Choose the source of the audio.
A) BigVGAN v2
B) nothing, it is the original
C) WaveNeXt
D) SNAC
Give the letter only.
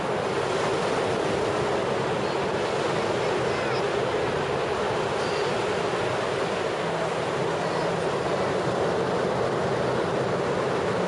B